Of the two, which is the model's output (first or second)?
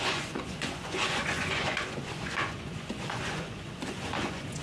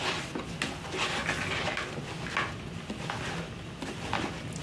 first